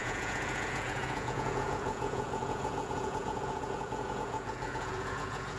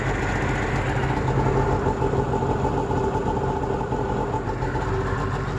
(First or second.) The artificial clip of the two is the first